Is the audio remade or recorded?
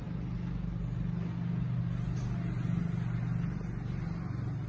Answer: recorded